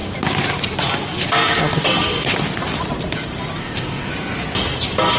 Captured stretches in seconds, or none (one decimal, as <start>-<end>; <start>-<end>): 0.0-3.6; 4.1-5.2